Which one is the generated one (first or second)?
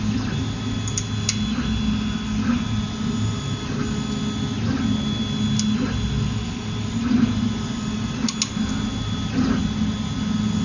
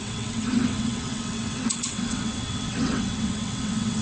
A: second